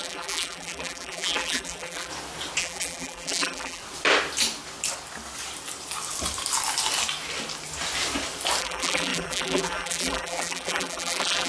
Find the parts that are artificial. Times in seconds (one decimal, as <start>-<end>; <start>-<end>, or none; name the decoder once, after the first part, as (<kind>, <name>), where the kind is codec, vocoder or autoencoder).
0.0-2.1 (vocoder, BigVGAN v2); 2.6-3.8; 8.6-11.5